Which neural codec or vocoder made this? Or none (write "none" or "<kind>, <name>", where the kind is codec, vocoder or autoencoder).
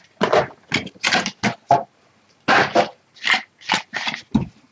none